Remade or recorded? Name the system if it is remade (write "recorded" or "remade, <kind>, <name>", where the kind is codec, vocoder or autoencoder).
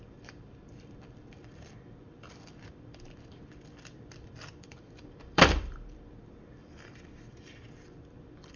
remade, vocoder, BigVGAN v2